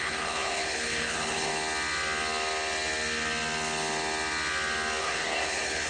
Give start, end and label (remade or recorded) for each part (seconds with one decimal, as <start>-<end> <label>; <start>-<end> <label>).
0.0-1.5 remade; 1.5-5.0 recorded; 5.0-5.9 remade